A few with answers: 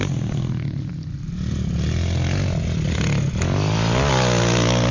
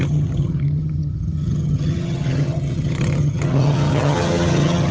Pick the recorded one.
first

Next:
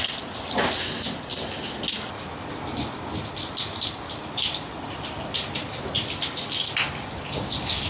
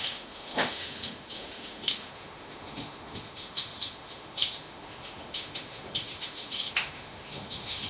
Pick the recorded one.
first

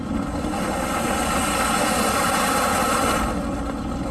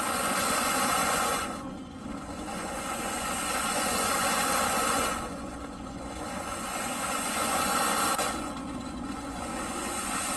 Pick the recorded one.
first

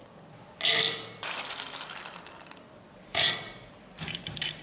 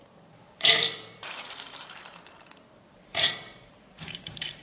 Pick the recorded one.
first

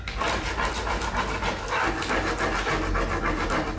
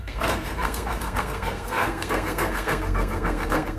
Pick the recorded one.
first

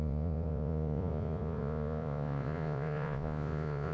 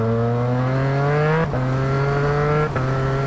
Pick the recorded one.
second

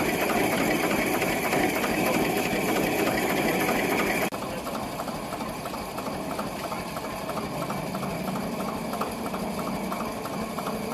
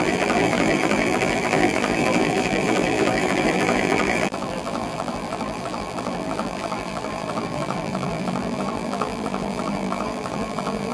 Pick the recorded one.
first